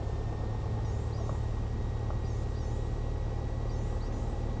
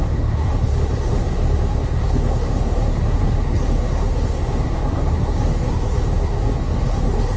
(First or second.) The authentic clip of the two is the first